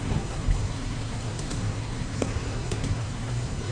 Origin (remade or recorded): remade